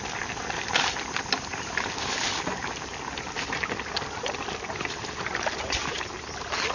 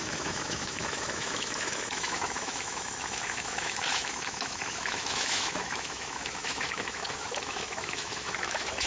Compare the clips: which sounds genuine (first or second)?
first